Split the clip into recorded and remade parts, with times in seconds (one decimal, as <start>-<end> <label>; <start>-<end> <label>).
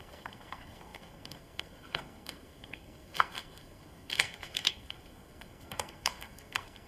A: 0.0-6.9 remade